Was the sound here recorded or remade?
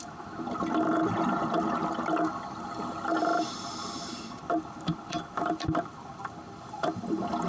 remade